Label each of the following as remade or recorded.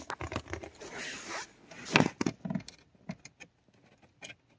recorded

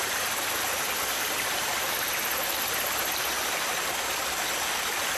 recorded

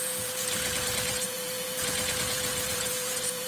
remade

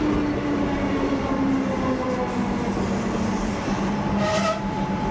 recorded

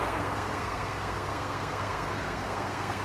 remade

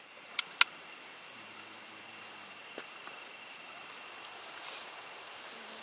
recorded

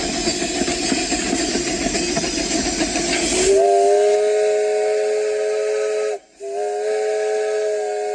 recorded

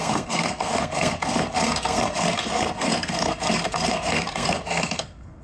remade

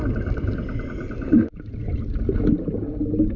recorded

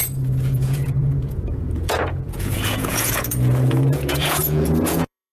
remade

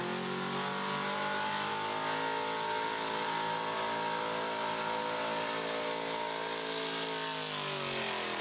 recorded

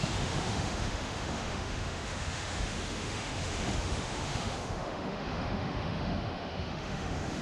remade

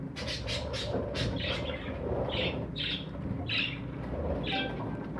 recorded